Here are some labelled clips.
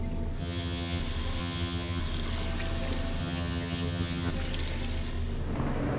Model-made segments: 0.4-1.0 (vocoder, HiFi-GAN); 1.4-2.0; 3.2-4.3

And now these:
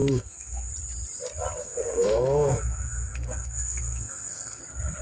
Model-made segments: 0.0-0.7 (codec, SNAC); 1.6-4.6

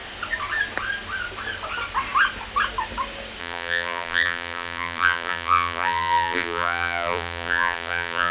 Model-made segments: 3.4-8.3 (vocoder, BigVGAN v2)

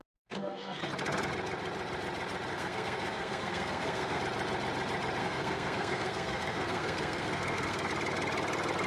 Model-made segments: 0.0-0.8 (codec, SNAC); 2.5-4.2; 5.2-7.9

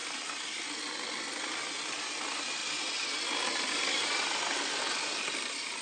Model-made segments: none

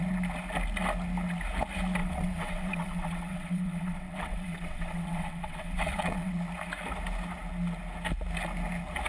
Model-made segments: 2.0-6.3 (vocoder, WaveNeXt)

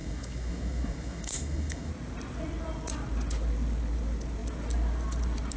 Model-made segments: 0.0-1.9 (autoencoder, DAC-VAE)

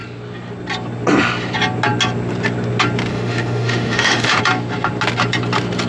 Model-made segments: 3.1-4.4 (autoencoder, DAC-VAE)